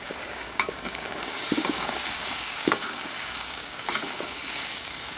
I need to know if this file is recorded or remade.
remade